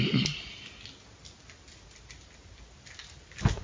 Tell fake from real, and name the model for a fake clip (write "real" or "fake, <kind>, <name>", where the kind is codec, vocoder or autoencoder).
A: real